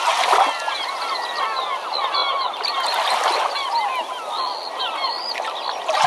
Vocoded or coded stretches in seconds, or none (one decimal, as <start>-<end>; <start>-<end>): none